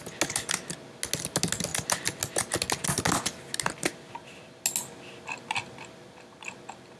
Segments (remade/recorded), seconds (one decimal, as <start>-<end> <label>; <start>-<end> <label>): 0.0-7.0 recorded